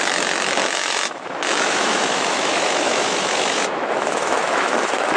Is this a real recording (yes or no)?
no